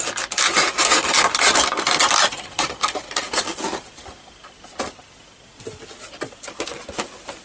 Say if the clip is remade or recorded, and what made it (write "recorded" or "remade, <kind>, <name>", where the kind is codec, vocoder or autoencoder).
recorded